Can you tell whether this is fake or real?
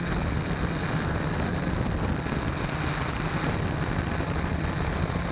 real